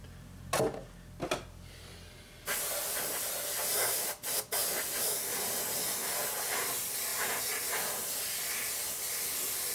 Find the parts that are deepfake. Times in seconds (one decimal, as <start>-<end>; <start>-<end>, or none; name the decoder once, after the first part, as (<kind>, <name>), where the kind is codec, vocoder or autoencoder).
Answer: 0.0-1.8 (vocoder, BigVGAN v2); 7.1-8.2